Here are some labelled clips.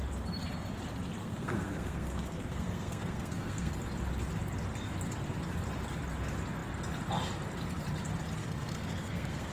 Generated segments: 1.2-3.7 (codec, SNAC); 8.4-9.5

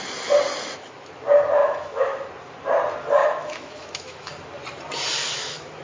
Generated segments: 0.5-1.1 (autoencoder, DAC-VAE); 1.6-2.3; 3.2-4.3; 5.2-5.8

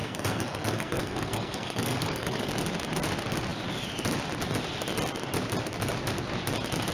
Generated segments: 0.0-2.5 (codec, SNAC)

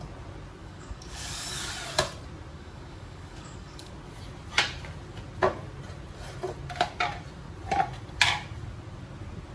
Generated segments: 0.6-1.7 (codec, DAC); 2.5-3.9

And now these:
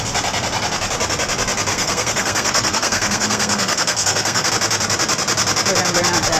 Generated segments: 1.7-4.5 (codec, SNAC)

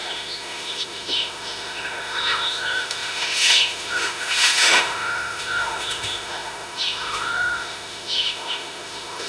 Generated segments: 0.0-9.3 (autoencoder, DAC-VAE)

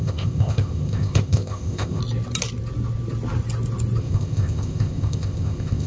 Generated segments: 0.0-2.0 (codec, ZipCodec); 4.0-5.9